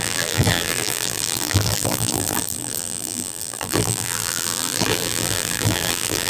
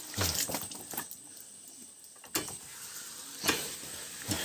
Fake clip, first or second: first